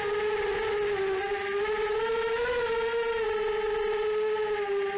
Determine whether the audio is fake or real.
real